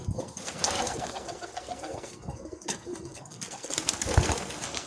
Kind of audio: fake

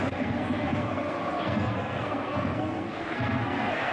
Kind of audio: fake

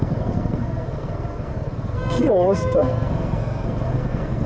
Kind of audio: fake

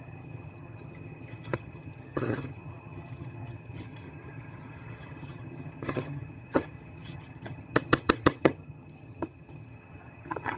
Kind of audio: fake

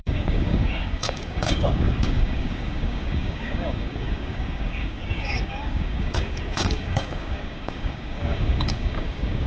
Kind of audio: fake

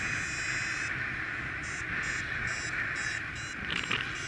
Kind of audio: real